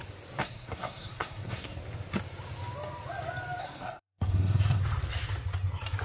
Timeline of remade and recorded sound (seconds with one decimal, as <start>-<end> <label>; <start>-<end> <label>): 0.0-0.4 recorded; 0.4-1.8 remade; 1.8-3.6 recorded; 3.6-4.8 remade; 4.8-6.0 recorded